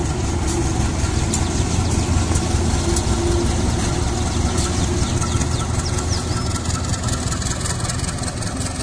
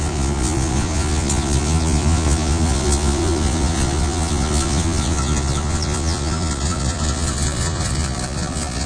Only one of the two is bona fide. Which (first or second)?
first